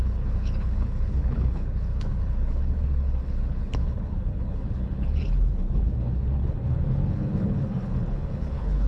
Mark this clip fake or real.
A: fake